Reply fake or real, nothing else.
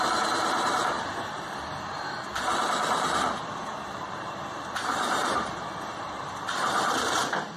fake